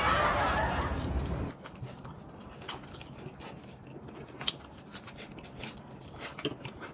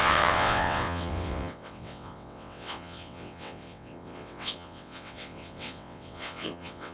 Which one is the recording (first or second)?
first